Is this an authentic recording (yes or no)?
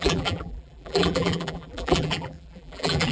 no